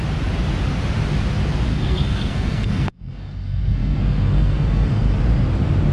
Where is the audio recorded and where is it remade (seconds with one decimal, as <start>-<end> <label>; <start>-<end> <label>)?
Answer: 0.0-1.7 recorded; 1.7-5.2 remade; 5.2-5.9 recorded